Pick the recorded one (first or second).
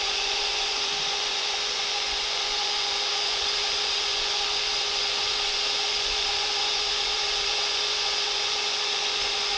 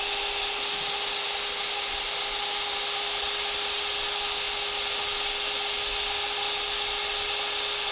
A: second